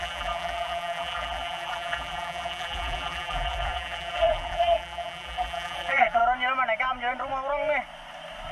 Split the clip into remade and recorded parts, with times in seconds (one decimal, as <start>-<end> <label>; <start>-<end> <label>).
0.0-6.2 remade; 6.2-8.5 recorded